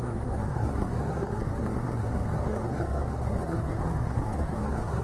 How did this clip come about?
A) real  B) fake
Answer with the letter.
B